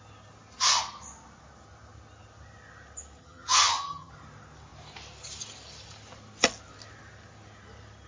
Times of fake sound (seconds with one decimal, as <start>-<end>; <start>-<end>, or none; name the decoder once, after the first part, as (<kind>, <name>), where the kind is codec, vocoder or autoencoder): 3.2-4.1 (vocoder, HiFi-GAN)